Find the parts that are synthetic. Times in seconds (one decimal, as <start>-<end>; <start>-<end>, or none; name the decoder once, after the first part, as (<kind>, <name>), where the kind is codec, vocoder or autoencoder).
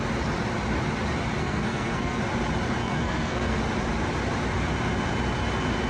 1.4-2.2 (codec, SNAC); 2.8-3.6